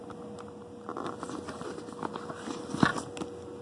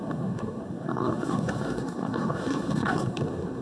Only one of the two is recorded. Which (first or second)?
first